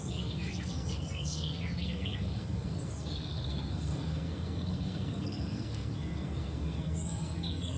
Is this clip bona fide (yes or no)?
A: no